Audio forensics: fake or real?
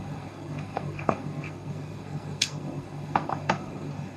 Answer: fake